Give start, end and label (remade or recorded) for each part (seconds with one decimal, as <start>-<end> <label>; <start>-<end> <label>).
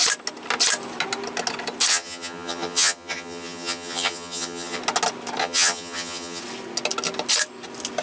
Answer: 0.0-1.9 recorded; 1.9-4.8 remade; 4.8-5.4 recorded; 5.4-6.4 remade; 6.4-8.0 recorded